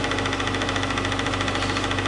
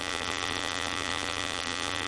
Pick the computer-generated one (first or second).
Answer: second